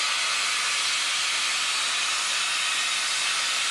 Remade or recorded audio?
recorded